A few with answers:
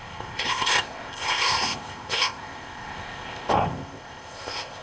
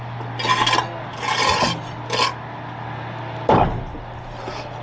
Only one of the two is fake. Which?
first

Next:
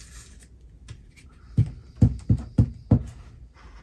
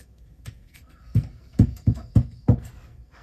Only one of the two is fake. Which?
second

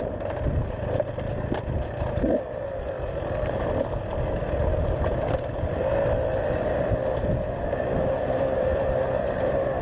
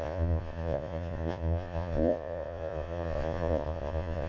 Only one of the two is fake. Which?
second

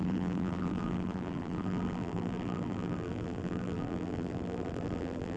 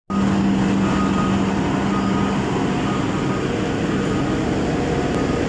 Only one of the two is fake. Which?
first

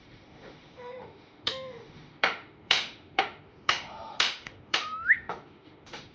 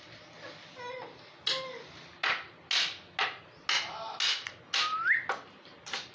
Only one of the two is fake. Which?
first